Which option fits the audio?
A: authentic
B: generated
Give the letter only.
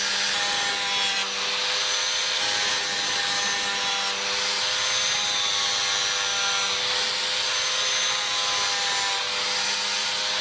A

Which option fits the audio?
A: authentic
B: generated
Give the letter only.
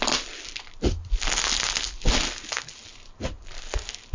A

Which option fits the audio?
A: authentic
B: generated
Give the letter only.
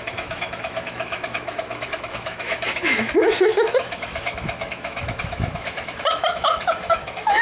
B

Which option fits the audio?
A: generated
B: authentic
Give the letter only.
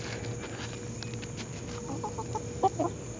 B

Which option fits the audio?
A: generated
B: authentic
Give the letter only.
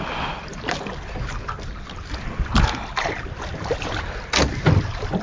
B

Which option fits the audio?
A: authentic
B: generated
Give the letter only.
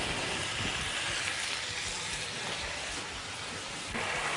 A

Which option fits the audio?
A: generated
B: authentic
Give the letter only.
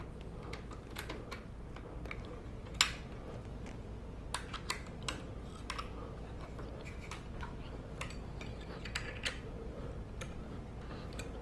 B